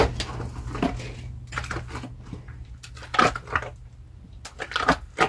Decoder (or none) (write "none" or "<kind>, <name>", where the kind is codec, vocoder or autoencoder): none